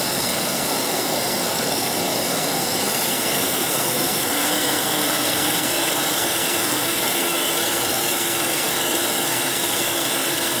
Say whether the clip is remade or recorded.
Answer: remade